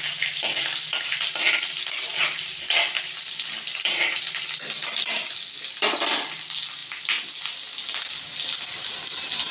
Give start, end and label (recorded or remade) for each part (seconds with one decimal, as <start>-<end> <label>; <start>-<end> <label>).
0.0-9.5 recorded